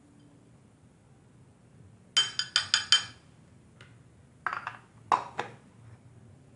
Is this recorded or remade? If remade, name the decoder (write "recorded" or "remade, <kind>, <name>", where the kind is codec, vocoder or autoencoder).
recorded